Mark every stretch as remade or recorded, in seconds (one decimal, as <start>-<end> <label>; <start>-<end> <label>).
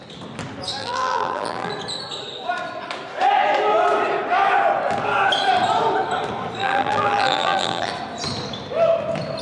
0.0-0.8 recorded; 0.8-1.7 remade; 1.7-6.6 recorded; 6.6-7.9 remade; 7.9-9.4 recorded